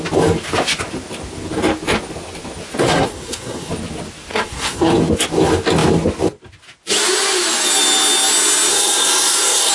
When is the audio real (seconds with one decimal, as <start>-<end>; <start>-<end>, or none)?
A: 0.0-2.8; 3.7-4.3; 4.9-8.7